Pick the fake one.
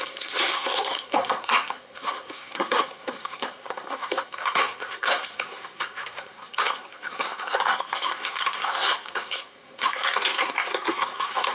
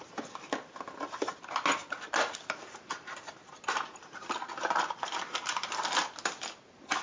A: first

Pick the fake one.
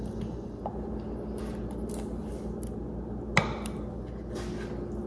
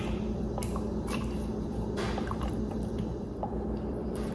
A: second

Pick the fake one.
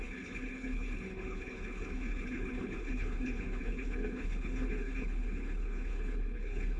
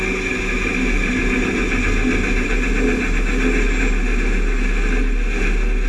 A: first